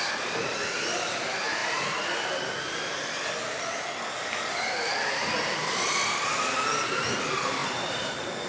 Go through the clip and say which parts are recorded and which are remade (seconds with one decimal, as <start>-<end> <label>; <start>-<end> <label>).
0.0-8.5 recorded